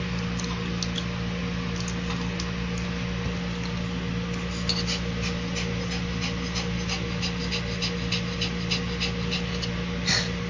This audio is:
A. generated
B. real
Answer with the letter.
B